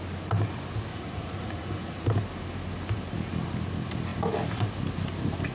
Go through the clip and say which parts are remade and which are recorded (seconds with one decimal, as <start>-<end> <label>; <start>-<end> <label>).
0.0-0.9 recorded; 0.9-2.0 remade; 2.0-5.5 recorded